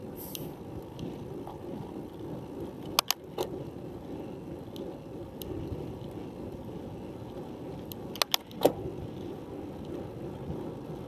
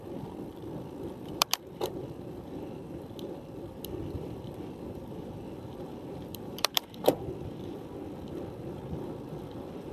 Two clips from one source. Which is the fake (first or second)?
second